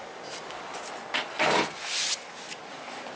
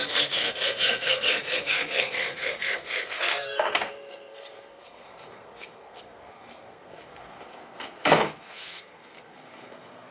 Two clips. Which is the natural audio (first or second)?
first